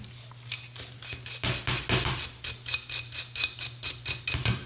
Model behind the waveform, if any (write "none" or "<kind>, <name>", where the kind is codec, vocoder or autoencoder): none